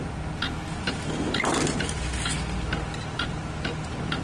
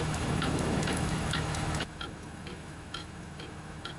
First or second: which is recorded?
first